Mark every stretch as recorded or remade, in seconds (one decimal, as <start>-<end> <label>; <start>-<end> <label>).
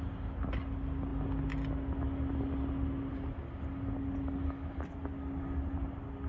0.0-6.3 recorded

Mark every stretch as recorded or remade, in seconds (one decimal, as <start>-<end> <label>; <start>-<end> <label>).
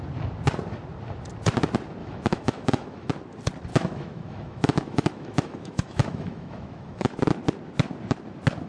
0.0-2.0 recorded; 2.0-3.1 remade; 3.1-3.7 recorded; 3.7-7.2 remade; 7.2-8.7 recorded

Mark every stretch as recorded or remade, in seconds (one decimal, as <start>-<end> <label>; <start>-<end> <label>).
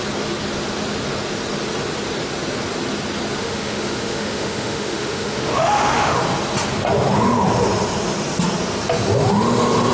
0.0-3.4 recorded; 3.4-6.2 remade; 6.2-9.9 recorded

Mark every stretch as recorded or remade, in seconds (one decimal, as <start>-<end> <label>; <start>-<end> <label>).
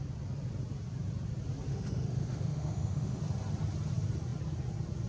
0.0-1.7 recorded; 1.7-3.2 remade; 3.2-5.1 recorded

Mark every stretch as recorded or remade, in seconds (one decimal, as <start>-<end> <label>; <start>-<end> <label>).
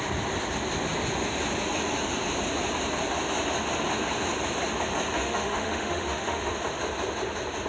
0.0-5.2 recorded; 5.2-6.5 remade; 6.5-7.7 recorded